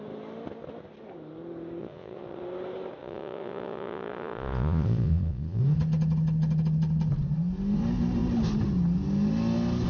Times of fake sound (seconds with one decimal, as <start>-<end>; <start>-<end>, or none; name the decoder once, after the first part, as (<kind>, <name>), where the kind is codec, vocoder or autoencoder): 1.8-2.4 (vocoder, Vocos); 3.0-5.6